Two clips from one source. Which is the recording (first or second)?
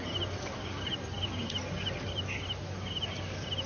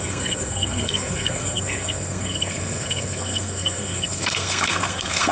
first